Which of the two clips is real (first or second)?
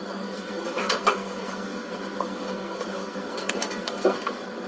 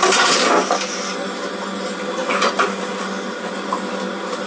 second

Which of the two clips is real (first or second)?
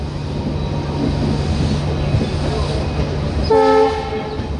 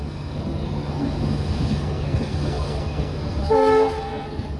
first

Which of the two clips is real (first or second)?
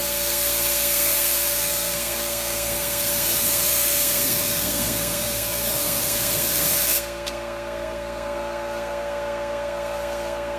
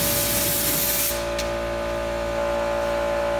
second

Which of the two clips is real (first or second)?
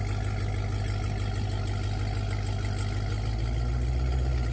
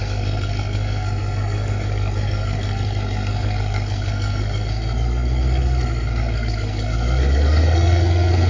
first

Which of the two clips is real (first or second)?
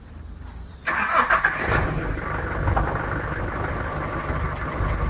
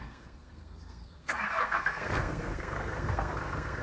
first